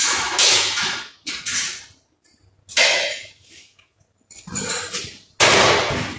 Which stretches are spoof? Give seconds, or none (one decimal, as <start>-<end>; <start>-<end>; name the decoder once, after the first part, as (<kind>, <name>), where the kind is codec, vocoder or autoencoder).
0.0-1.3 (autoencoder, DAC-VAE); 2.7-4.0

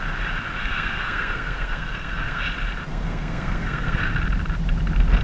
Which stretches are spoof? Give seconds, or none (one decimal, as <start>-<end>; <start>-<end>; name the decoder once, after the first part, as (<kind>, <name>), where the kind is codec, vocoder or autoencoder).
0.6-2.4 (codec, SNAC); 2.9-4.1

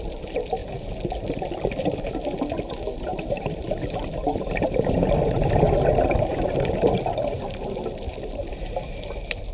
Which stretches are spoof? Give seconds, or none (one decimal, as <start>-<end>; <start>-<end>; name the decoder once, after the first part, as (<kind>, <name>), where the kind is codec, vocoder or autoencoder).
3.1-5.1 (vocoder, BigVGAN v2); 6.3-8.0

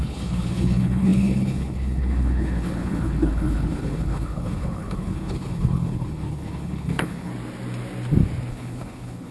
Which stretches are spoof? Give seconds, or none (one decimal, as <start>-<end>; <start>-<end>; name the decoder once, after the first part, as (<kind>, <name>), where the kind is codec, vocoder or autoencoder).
0.0-7.3 (codec, HILCodec); 8.5-9.3

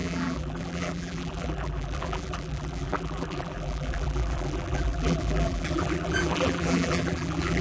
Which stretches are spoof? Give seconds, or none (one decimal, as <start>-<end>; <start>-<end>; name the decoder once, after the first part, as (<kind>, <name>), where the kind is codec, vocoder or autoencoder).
0.0-7.6 (vocoder, BigVGAN v2)